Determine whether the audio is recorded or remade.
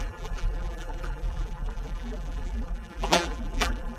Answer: remade